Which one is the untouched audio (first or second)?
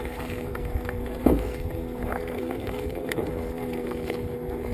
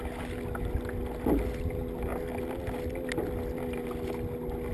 second